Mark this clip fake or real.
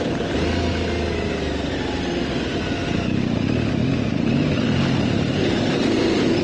real